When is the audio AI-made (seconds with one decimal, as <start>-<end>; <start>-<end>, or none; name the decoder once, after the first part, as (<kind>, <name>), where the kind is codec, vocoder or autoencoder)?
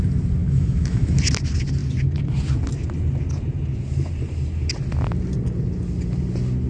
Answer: 0.4-1.2 (autoencoder, DAC-VAE)